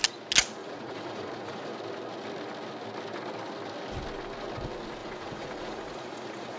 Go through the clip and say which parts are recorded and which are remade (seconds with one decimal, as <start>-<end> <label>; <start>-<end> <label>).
0.0-0.6 recorded; 0.6-1.8 remade; 1.8-5.0 recorded; 5.0-6.6 remade